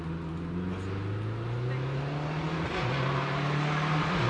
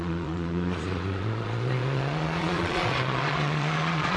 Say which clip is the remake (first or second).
second